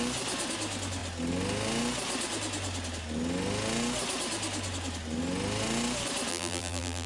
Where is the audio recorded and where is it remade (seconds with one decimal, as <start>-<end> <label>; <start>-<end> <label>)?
0.0-6.3 recorded; 6.3-7.1 remade